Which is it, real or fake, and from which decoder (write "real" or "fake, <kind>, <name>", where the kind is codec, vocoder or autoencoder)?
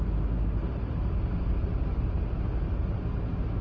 real